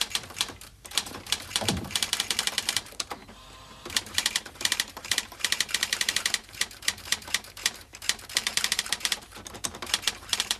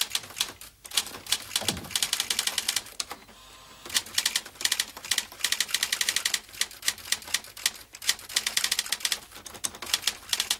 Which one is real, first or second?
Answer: second